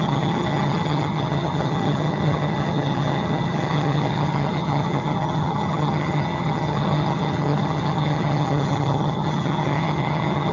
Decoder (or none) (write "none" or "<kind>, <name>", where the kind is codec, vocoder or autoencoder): vocoder, HiFi-GAN